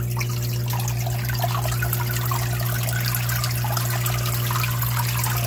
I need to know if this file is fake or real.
real